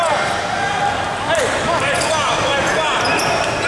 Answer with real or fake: real